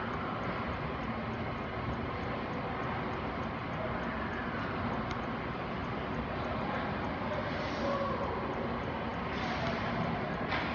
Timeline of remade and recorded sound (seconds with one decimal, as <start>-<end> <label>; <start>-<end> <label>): 0.0-10.7 recorded